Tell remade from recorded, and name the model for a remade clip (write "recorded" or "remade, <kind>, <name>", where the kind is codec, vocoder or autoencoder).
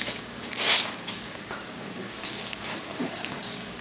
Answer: remade, codec, DAC